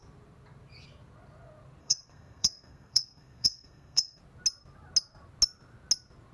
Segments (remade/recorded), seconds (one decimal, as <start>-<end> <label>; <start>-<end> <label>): 0.0-1.8 recorded; 1.8-4.2 remade; 4.2-6.3 recorded